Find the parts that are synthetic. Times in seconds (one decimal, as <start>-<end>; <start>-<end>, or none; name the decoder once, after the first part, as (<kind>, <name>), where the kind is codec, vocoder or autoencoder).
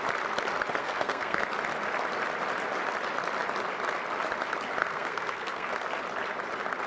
0.8-1.4 (codec, SNAC); 4.8-5.7